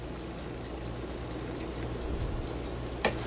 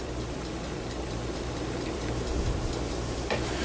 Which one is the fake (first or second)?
second